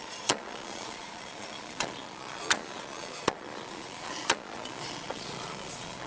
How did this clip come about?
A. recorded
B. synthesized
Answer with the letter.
B